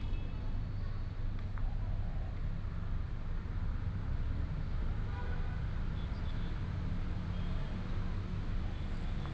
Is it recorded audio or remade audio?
recorded